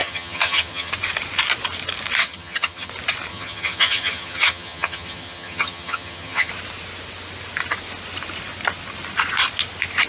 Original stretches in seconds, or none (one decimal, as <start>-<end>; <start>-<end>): 0.9-2.2; 2.9-3.3; 6.5-10.1

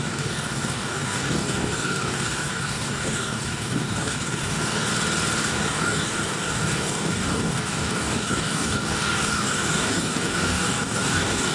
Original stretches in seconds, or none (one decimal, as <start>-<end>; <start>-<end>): 4.9-5.4